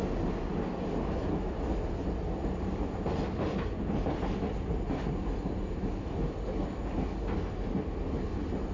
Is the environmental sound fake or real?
real